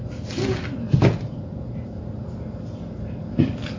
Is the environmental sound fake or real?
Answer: real